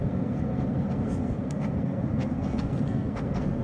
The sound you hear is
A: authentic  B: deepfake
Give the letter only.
B